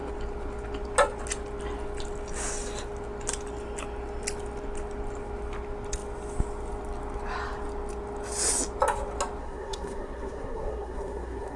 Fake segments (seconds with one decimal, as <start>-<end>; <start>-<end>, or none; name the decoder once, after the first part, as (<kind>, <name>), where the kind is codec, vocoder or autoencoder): 9.4-11.6 (codec, SNAC)